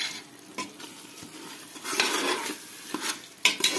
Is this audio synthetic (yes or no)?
no